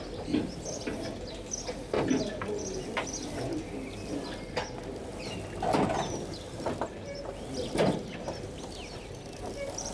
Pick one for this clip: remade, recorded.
recorded